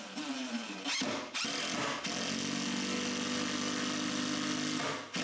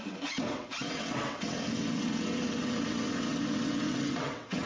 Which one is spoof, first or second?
second